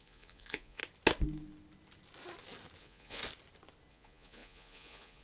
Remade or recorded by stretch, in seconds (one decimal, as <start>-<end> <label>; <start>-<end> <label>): 0.0-0.8 remade; 0.8-2.8 recorded; 2.8-3.2 remade; 3.2-3.9 recorded; 3.9-5.2 remade